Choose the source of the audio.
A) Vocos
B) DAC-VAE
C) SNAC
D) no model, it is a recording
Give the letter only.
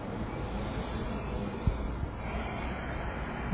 D